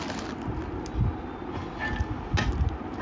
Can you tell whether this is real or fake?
real